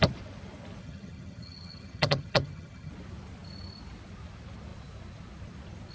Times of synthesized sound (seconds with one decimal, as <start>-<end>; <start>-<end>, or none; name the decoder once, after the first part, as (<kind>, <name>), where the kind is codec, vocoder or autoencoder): 0.8-2.9 (vocoder, HiFi-GAN)